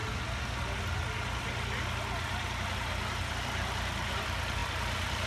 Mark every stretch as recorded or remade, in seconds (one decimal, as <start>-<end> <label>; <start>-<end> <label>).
0.0-3.2 recorded; 3.2-5.3 remade